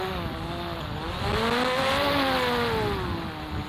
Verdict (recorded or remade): recorded